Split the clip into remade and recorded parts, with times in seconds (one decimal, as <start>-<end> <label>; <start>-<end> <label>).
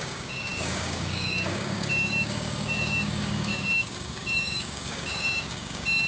0.0-6.1 remade